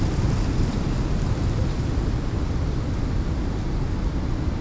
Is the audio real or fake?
real